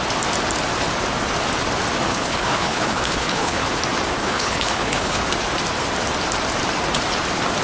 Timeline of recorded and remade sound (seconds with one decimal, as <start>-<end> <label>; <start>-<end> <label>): 0.0-2.1 recorded; 2.1-3.6 remade; 3.6-4.2 recorded; 4.2-5.2 remade; 5.2-7.6 recorded